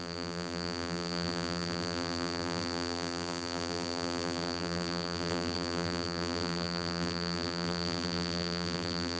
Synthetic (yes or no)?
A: yes